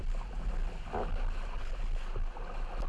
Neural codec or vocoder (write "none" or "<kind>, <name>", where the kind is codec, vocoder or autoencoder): none